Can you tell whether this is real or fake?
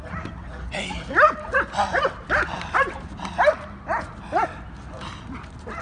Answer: real